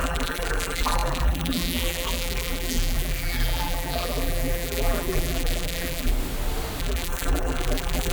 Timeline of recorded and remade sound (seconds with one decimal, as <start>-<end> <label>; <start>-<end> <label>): 0.0-6.1 remade; 6.1-6.8 recorded; 6.8-8.1 remade